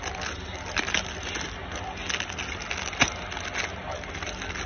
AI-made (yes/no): no